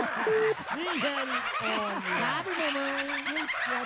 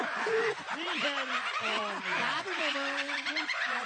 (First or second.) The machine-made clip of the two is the second